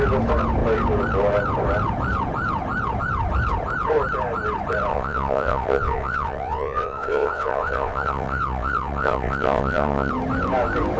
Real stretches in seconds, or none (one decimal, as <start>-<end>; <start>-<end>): 0.0-4.9; 10.1-11.0